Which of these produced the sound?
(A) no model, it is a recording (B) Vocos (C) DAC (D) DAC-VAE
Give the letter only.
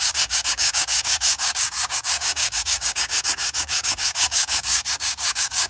C